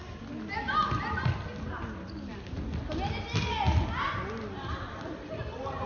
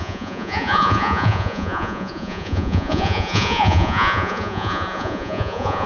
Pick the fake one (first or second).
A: second